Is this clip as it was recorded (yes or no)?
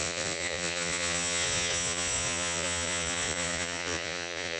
no